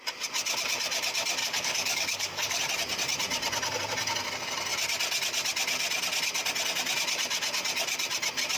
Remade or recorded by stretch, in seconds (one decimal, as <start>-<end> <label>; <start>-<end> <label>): 0.0-1.4 recorded; 1.4-2.6 remade; 2.6-8.6 recorded